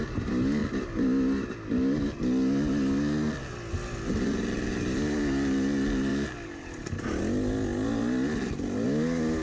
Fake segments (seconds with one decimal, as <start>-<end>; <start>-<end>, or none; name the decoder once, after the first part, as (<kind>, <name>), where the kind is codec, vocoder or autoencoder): none